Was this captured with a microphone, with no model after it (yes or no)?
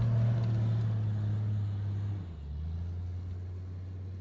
yes